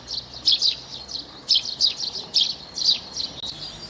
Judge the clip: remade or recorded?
recorded